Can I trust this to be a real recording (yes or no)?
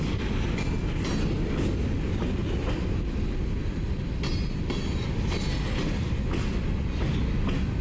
yes